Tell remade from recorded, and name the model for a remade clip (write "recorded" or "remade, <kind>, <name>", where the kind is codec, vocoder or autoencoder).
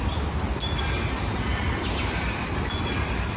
recorded